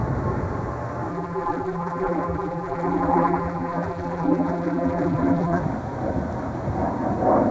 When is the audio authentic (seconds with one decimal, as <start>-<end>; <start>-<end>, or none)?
0.0-1.1; 5.6-7.5